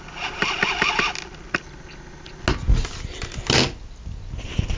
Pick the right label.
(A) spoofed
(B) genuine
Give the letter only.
B